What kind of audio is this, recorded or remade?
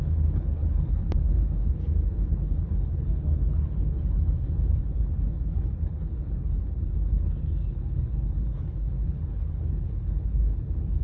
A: remade